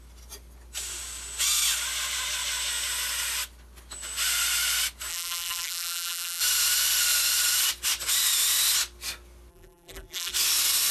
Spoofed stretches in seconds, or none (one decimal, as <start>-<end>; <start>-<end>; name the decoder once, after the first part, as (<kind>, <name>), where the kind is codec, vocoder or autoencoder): 5.1-6.4 (vocoder, BigVGAN v2); 9.5-10.3